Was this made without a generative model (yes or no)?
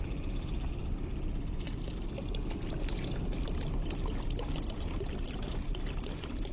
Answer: yes